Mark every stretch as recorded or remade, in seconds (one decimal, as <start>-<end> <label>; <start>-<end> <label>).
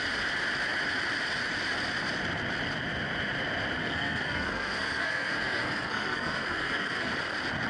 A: 0.0-3.8 recorded; 3.8-7.1 remade; 7.1-7.7 recorded